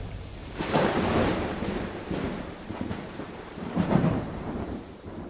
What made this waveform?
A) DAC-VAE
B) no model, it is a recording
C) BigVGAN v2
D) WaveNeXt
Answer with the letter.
C